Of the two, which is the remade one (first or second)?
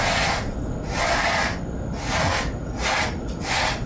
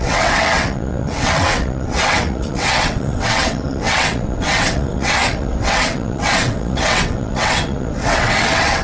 second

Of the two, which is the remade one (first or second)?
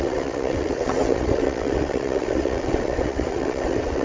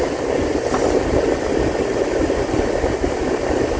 first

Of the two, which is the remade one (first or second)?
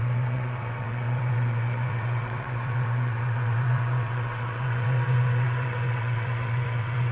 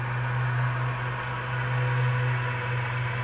first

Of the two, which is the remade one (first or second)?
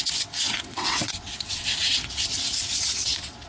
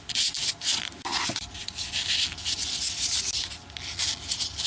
first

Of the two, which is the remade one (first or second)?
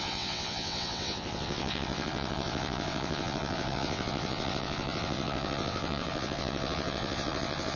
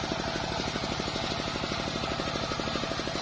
first